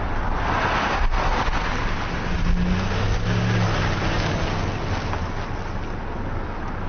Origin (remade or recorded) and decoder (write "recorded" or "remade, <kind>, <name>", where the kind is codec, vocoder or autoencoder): recorded